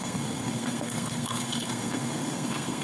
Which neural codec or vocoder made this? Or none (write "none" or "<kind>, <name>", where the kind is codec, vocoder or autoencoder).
codec, SNAC